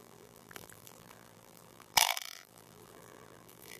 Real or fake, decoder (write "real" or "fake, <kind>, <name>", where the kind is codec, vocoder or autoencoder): fake, vocoder, BigVGAN v2